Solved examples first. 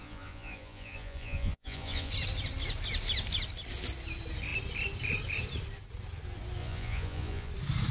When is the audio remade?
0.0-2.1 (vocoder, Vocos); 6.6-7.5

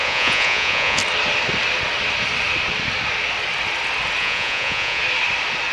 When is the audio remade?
0.0-1.0 (vocoder, Vocos); 4.2-5.0

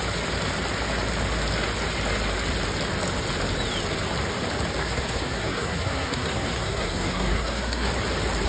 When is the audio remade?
4.8-7.9 (codec, SNAC)

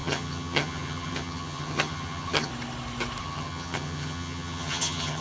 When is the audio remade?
0.0-2.5 (vocoder, HiFi-GAN); 3.2-5.2

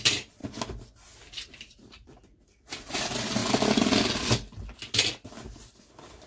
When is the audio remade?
0.0-0.4 (vocoder, BigVGAN v2); 1.5-3.4; 5.8-6.3

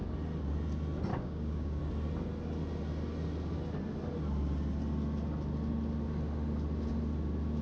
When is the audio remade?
1.1-1.8 (codec, DAC)